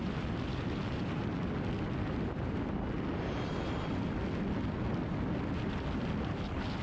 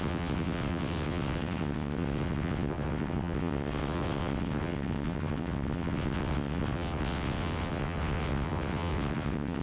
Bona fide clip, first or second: first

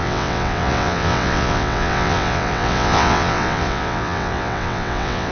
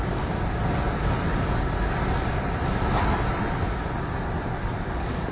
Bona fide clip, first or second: second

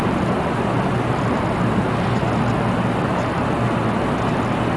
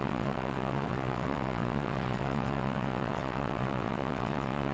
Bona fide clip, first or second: first